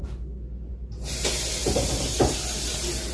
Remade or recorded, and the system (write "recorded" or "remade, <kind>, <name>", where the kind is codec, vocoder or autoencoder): recorded